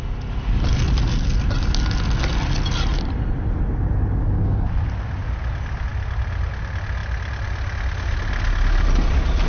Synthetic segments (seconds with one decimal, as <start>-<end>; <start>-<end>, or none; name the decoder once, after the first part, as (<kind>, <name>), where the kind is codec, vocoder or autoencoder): none